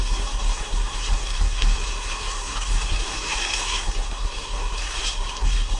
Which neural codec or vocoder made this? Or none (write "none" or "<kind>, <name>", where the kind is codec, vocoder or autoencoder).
codec, SNAC